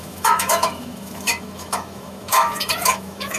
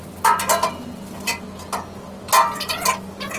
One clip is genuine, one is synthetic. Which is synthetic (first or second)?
first